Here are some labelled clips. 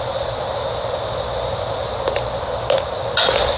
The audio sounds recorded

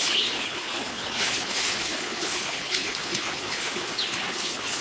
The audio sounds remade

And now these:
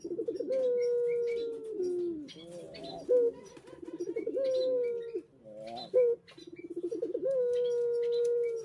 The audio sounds recorded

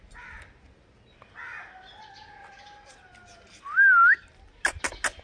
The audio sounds recorded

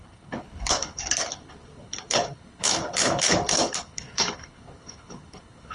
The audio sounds remade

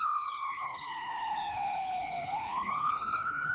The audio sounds remade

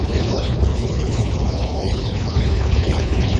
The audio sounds remade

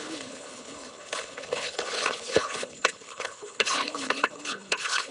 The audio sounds remade